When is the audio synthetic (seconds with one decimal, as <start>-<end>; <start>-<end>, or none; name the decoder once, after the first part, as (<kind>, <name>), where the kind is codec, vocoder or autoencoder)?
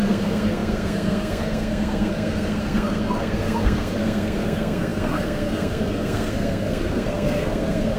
0.0-8.0 (codec, SNAC)